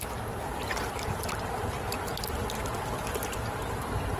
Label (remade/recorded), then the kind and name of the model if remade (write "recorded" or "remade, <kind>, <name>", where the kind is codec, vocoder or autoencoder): recorded